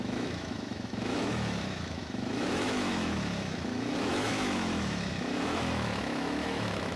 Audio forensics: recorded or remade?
remade